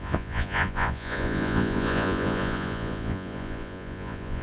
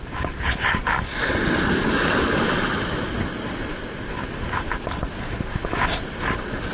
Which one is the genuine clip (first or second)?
second